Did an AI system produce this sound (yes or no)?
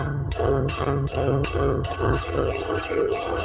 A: yes